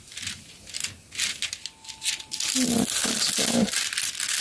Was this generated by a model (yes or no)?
no